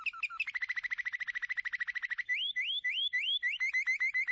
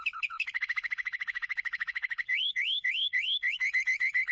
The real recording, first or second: first